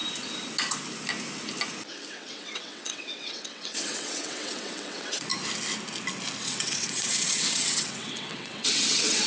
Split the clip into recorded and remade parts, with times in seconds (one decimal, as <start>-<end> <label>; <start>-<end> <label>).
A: 0.0-2.1 recorded; 2.1-5.3 remade; 5.3-6.4 recorded; 6.4-9.3 remade